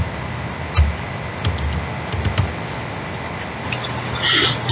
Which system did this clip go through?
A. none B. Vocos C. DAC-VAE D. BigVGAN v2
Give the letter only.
A